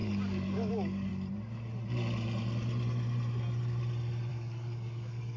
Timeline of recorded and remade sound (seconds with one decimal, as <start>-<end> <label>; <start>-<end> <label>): 0.0-1.1 remade; 1.1-4.3 recorded; 4.3-5.4 remade